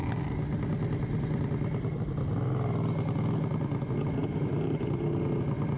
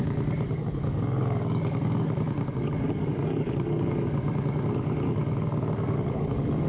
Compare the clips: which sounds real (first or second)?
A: first